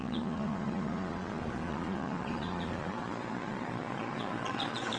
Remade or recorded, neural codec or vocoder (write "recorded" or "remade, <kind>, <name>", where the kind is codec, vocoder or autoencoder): remade, vocoder, Vocos